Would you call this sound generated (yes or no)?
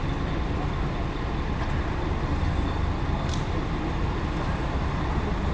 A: no